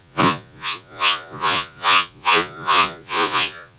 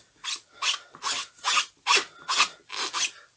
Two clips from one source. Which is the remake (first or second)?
first